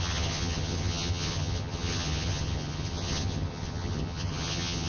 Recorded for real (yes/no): no